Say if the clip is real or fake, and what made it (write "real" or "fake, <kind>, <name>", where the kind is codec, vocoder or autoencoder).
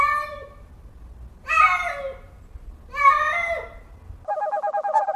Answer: real